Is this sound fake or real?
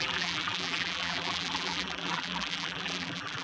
fake